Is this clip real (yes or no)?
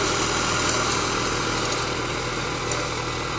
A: yes